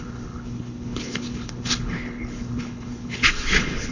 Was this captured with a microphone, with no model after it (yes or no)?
no